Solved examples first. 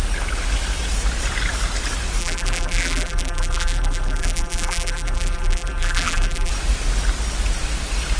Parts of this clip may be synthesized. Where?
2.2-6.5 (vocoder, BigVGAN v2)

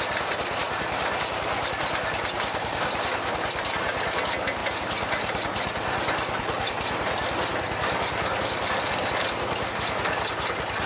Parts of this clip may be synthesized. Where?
4.6-9.7 (vocoder, BigVGAN v2)